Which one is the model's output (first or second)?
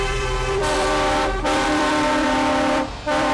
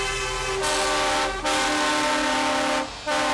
first